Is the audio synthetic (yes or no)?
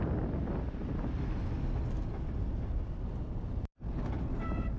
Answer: no